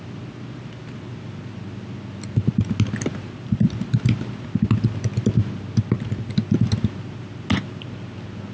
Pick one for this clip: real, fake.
real